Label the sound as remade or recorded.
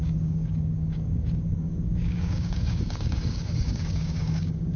remade